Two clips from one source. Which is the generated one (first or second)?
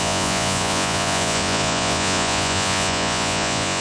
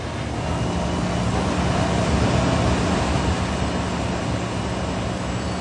first